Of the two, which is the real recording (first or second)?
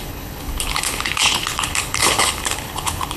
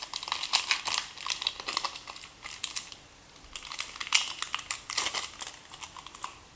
second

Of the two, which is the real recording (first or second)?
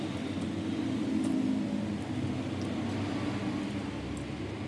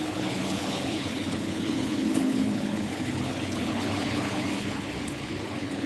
first